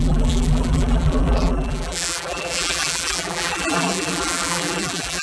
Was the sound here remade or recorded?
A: remade